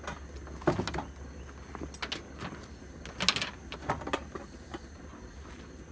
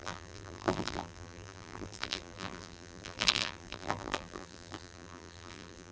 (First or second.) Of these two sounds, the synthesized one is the second